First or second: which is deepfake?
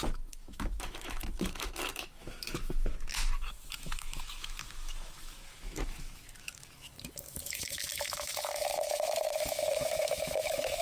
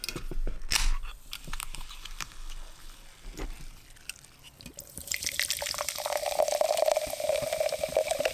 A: first